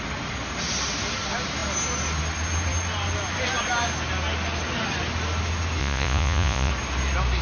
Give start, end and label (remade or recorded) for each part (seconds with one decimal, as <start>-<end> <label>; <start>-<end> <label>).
0.0-5.8 recorded; 5.8-6.7 remade; 6.7-7.4 recorded